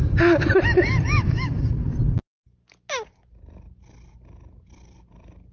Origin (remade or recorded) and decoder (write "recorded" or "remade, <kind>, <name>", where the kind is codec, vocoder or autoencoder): recorded